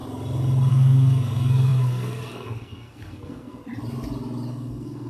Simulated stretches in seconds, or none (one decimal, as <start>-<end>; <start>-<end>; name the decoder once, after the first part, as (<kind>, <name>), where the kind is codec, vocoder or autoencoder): 0.7-3.6 (codec, SNAC); 4.5-5.1